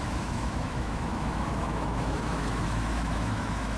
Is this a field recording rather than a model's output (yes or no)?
no